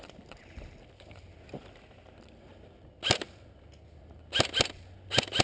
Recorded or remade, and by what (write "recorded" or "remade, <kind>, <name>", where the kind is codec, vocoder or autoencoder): recorded